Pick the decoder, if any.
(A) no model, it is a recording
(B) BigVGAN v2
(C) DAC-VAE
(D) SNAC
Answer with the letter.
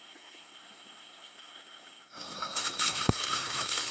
D